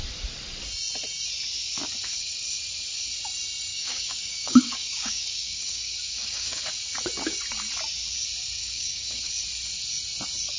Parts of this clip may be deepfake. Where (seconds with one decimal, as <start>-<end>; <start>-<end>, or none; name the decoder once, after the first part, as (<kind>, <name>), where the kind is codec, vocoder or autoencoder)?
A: 3.7-6.6 (codec, DAC); 8.6-9.3